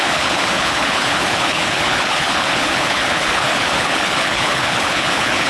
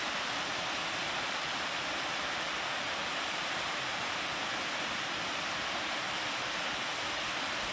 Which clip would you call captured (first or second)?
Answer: second